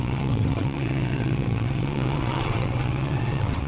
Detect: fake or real fake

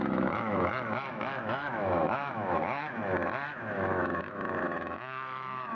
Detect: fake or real fake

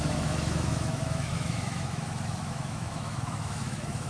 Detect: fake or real fake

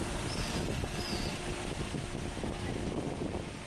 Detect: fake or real real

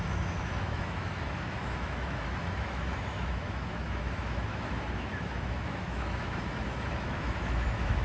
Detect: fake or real fake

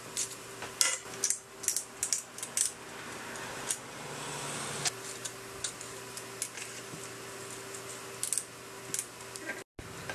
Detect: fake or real real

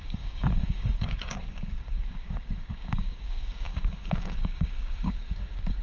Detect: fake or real fake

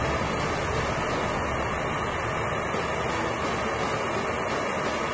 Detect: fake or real real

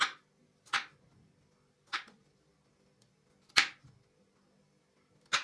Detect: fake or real real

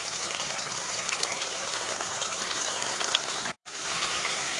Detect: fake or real fake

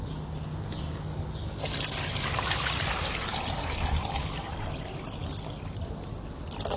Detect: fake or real real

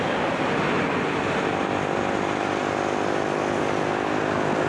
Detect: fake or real real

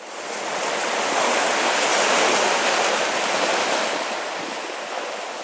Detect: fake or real real